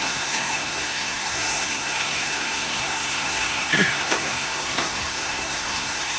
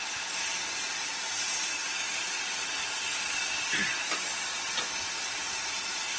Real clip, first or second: second